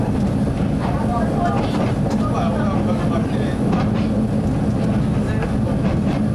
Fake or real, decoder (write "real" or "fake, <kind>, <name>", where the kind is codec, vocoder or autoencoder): real